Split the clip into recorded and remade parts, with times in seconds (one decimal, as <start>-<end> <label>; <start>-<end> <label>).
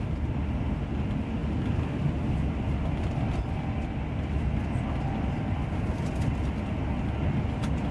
0.0-7.9 recorded